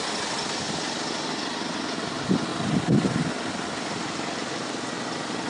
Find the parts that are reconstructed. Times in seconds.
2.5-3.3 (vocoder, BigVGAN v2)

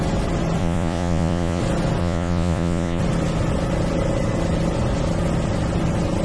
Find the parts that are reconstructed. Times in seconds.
0.6-1.6 (vocoder, Vocos); 2.0-3.0

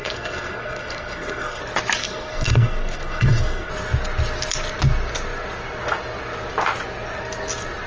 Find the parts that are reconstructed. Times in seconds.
0.0-1.6 (codec, SNAC); 2.0-3.7

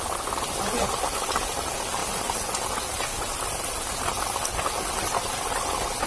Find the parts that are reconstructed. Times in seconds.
none

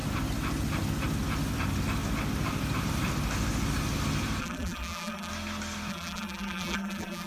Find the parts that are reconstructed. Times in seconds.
4.4-5.3 (vocoder, BigVGAN v2); 5.9-7.3